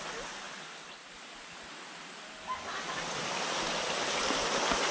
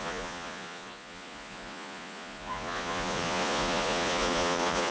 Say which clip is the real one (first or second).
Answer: first